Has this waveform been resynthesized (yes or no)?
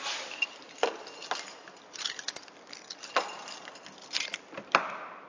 no